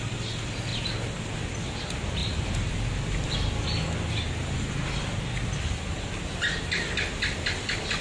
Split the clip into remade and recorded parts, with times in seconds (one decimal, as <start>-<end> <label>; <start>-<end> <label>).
0.0-8.0 recorded